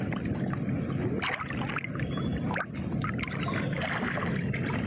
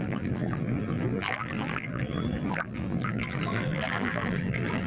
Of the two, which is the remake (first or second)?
second